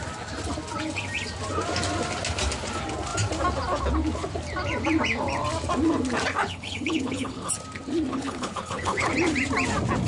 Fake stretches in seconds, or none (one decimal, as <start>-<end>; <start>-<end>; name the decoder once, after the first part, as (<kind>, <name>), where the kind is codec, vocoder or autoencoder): 6.4-7.5 (codec, HILCodec); 8.1-9.1